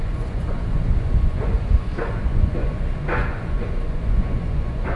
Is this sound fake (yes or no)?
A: yes